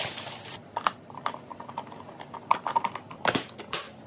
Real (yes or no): yes